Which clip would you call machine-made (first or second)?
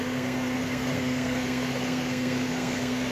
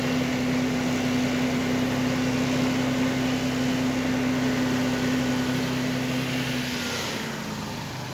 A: first